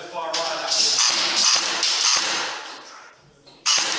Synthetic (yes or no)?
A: yes